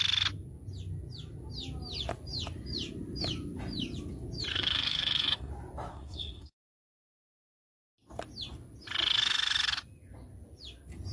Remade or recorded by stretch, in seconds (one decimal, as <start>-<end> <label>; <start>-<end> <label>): 0.0-4.5 recorded; 4.5-5.5 remade; 5.5-5.9 recorded; 5.9-6.6 remade; 6.6-11.1 recorded